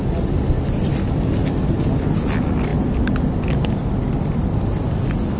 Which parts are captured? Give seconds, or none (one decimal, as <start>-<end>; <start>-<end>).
0.0-2.7; 4.8-5.4